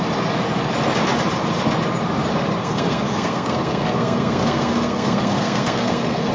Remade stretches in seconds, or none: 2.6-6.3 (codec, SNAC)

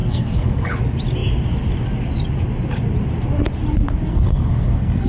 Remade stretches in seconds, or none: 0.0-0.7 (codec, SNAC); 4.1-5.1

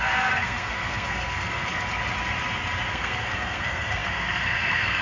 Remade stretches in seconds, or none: 0.0-1.7 (codec, SNAC); 2.9-5.0

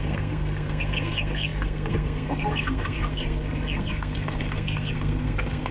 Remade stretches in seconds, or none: 0.0-5.7 (codec, SNAC)

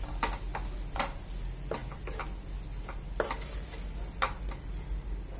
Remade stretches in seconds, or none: none